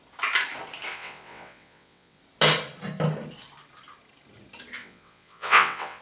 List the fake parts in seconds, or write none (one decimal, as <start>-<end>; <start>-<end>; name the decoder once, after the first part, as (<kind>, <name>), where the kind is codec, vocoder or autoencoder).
0.9-2.2 (vocoder, WaveNeXt); 4.8-6.0